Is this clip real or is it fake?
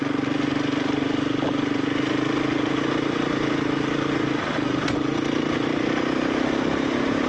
real